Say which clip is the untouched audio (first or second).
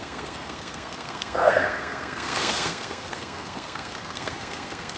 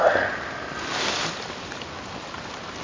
second